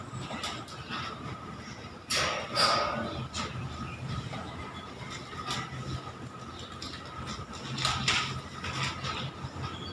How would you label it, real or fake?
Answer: real